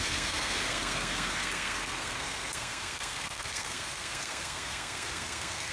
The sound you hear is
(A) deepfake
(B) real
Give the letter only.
A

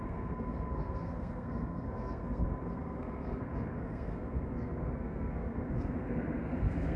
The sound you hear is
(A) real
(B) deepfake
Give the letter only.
B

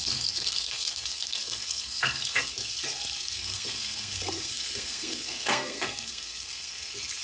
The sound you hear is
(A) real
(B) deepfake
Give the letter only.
B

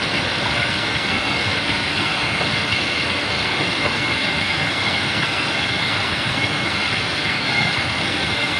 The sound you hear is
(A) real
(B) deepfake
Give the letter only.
B